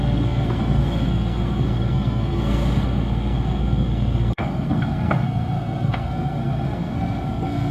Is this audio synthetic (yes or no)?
yes